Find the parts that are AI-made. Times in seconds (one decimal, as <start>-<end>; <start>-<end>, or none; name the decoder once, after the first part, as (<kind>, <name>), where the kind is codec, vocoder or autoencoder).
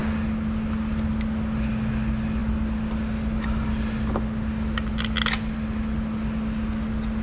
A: none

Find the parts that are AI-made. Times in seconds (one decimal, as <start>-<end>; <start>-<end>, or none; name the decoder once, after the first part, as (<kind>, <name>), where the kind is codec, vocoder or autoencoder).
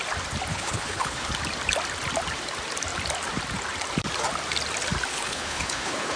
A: 0.5-1.3 (codec, HILCodec); 5.1-6.2